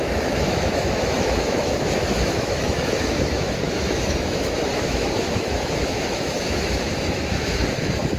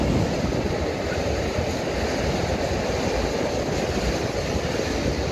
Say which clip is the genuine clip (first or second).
second